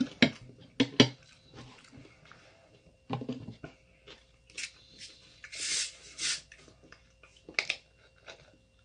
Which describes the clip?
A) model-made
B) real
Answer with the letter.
B